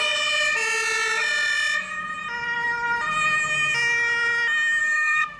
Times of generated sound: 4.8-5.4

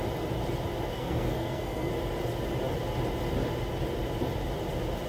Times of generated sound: 0.9-1.9

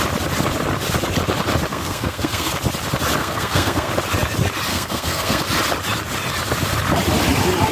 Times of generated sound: 1.7-2.5; 3.2-3.9; 4.7-5.4

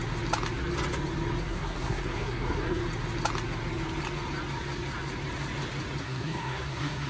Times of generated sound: 1.4-2.8; 6.0-7.1